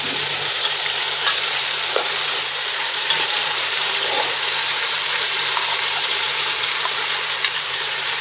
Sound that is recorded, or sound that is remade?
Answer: remade